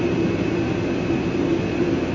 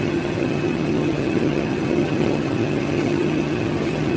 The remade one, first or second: second